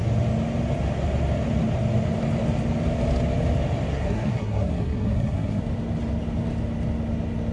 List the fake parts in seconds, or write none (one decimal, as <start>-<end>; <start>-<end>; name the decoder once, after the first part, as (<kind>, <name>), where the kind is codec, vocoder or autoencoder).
3.9-5.6 (codec, SNAC)